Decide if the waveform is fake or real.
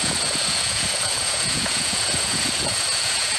fake